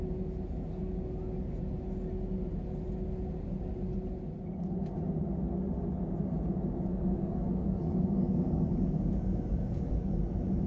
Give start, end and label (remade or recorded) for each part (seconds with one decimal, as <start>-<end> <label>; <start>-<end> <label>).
0.0-6.9 recorded; 6.9-10.1 remade; 10.1-10.7 recorded